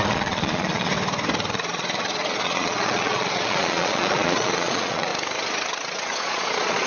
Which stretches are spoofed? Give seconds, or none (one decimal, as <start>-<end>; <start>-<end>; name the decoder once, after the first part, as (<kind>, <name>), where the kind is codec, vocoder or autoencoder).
0.0-0.9 (vocoder, Vocos); 1.5-5.1; 5.7-6.9